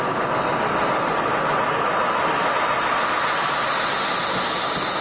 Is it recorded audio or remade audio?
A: recorded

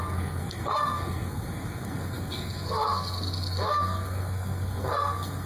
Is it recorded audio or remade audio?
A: remade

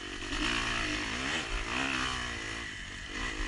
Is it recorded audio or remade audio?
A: recorded